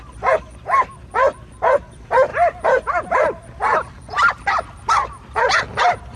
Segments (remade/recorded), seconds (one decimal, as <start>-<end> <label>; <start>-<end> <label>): 0.0-6.2 recorded